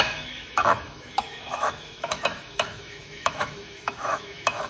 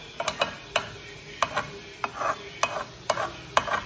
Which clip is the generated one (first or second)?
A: first